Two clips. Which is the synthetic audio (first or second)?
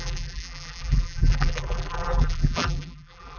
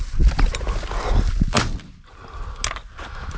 first